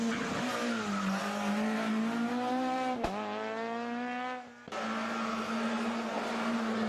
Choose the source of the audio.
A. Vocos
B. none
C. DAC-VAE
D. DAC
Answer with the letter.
B